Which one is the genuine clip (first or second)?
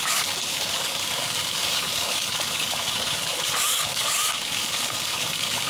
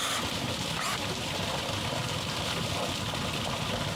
second